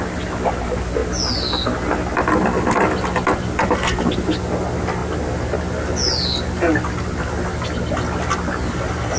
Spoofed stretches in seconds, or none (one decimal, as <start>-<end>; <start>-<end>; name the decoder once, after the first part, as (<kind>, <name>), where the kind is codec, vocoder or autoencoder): none

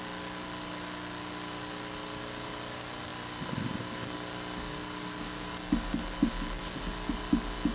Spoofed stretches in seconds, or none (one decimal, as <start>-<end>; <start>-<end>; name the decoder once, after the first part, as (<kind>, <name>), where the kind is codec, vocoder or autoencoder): none

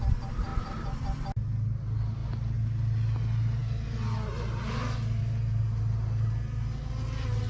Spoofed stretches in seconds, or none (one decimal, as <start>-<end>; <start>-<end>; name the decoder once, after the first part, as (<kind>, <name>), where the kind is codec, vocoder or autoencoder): none

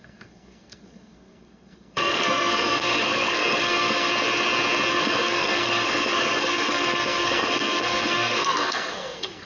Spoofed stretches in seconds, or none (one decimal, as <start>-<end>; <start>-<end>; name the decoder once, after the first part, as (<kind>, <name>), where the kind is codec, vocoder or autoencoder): 0.0-4.1 (codec, SNAC); 4.9-9.5

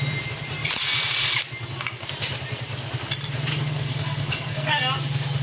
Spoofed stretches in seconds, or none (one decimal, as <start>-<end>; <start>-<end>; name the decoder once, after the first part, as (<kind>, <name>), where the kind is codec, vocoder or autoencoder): 3.5-4.8 (codec, SNAC)